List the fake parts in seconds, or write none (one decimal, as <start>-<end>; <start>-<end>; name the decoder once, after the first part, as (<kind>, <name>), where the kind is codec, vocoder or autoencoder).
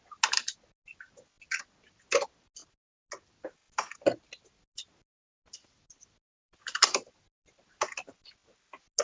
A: 6.3-7.1 (vocoder, BigVGAN v2)